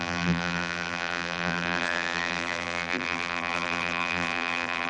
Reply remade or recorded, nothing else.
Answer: remade